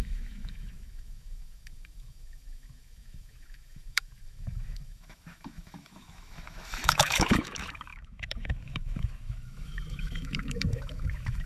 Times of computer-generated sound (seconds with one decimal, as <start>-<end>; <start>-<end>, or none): 0.0-11.5